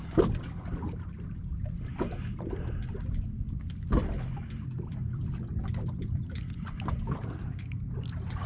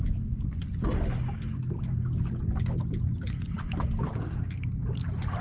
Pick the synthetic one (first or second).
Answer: first